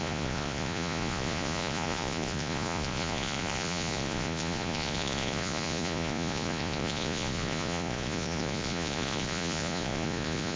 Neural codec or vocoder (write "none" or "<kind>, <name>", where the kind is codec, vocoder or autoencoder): vocoder, Vocos